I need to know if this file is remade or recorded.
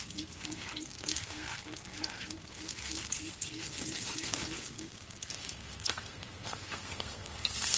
remade